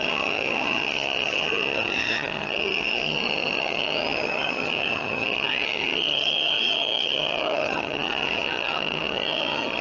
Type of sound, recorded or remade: remade